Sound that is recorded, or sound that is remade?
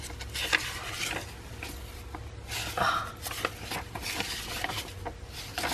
recorded